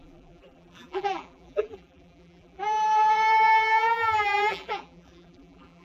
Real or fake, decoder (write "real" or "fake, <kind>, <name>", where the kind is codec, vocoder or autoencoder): fake, vocoder, BigVGAN v2